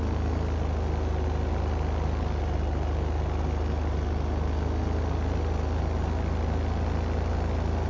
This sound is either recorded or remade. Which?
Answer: recorded